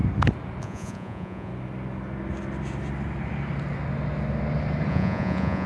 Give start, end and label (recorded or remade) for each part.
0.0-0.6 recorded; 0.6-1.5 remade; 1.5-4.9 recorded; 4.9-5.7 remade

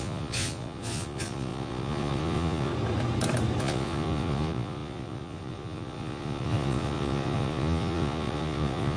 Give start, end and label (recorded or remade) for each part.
0.0-2.7 remade; 2.7-3.6 recorded; 3.6-9.0 remade

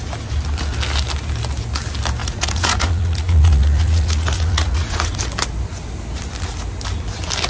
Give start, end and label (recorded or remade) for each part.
0.0-2.2 recorded; 2.2-5.2 remade; 5.2-7.5 recorded

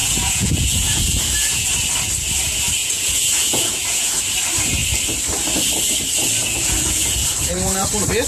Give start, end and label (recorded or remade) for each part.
0.0-1.7 remade; 1.7-2.8 recorded; 2.8-4.2 remade; 4.2-6.4 recorded; 6.4-7.4 remade; 7.4-8.3 recorded

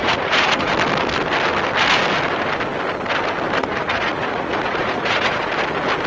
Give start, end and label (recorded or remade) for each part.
0.0-0.7 remade; 0.7-3.6 recorded; 3.6-5.5 remade; 5.5-6.1 recorded